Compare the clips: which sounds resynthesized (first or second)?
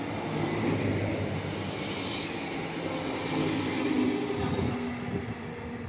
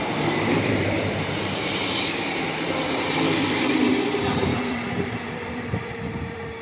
second